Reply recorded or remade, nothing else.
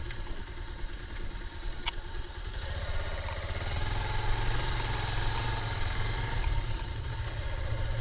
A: recorded